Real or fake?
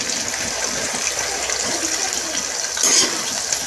real